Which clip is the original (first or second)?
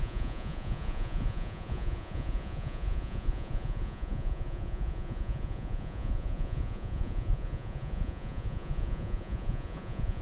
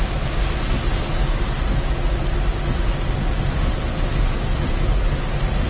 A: second